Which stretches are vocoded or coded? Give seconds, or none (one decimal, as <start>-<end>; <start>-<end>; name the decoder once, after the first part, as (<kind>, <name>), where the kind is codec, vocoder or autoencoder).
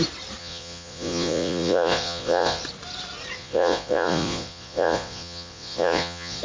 0.4-2.6 (vocoder, Vocos); 3.4-6.4